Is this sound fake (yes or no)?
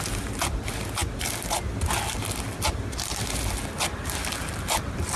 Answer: no